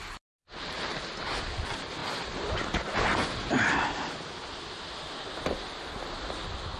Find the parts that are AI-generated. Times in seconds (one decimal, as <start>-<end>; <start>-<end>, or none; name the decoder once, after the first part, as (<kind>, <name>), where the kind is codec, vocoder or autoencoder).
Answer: none